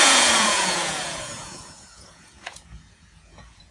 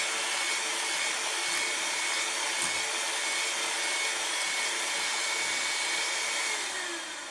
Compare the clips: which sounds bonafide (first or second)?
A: second